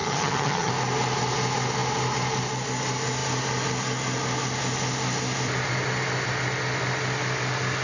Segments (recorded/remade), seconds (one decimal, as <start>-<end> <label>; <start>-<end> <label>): 0.0-0.7 remade; 0.7-7.8 recorded